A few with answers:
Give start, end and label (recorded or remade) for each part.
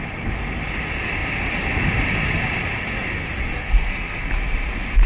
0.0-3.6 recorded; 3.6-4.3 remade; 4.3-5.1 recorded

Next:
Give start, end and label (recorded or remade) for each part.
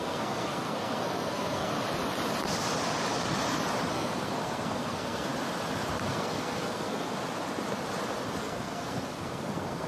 0.0-1.7 remade; 1.7-3.9 recorded; 3.9-5.3 remade; 5.3-6.1 recorded; 6.1-7.1 remade; 7.1-8.4 recorded; 8.4-9.9 remade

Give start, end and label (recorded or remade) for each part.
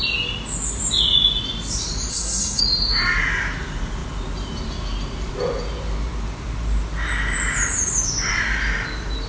0.0-2.1 recorded; 2.1-2.6 remade; 2.6-9.3 recorded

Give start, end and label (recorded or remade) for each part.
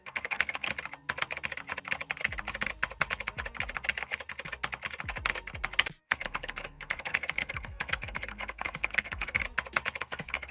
0.0-0.7 remade; 0.7-6.0 recorded; 6.0-9.4 remade; 9.4-10.0 recorded; 10.0-10.5 remade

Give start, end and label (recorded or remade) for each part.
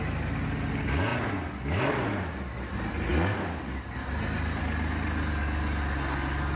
0.0-6.6 recorded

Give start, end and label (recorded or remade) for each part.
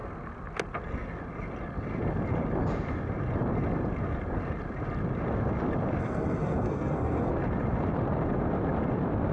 0.0-6.0 recorded; 6.0-7.3 remade; 7.3-9.3 recorded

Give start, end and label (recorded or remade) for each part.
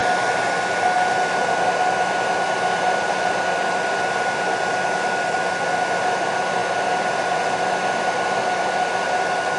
0.0-9.6 recorded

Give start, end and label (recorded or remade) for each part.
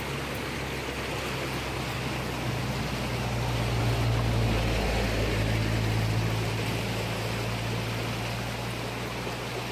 0.0-9.7 recorded